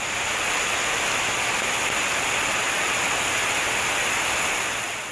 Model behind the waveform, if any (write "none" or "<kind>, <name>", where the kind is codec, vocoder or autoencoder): none